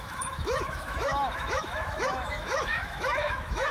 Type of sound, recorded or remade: remade